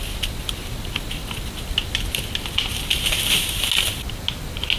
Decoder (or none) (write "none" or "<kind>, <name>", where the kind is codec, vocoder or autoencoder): none